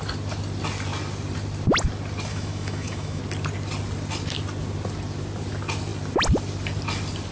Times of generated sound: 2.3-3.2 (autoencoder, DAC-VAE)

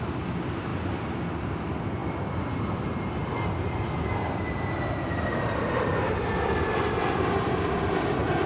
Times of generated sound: none

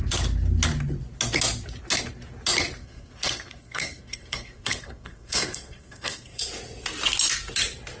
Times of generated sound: 2.8-6.4 (codec, SNAC)

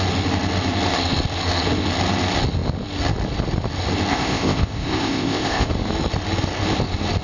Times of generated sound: 4.1-5.7 (codec, ZipCodec)